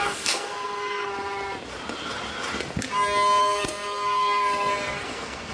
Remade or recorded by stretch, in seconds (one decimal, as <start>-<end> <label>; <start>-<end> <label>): 0.0-1.1 remade; 1.1-3.4 recorded; 3.4-5.5 remade